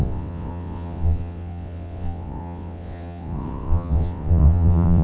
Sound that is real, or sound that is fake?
fake